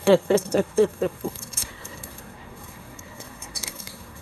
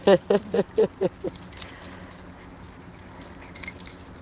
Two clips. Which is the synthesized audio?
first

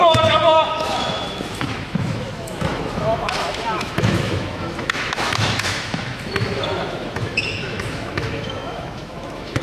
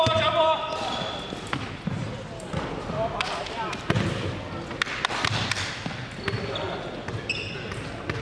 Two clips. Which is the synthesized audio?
first